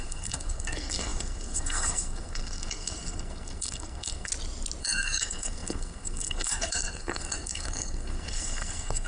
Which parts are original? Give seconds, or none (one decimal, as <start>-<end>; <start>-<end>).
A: 4.3-4.8